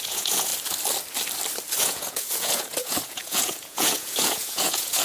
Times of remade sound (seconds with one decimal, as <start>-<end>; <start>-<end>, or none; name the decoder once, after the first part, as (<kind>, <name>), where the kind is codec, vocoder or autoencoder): 0.0-0.5 (vocoder, Vocos); 1.8-5.0